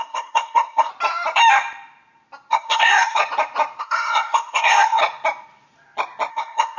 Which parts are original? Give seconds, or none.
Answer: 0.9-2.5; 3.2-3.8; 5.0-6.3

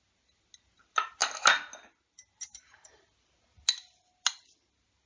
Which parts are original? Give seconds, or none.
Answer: 0.0-5.1

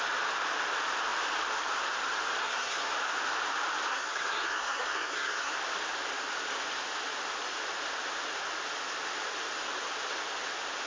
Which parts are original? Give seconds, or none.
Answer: 0.0-2.4; 2.9-3.9; 5.5-10.9

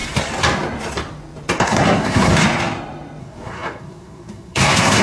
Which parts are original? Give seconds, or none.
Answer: 0.0-1.6; 2.3-3.2